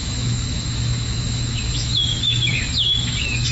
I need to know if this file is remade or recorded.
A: remade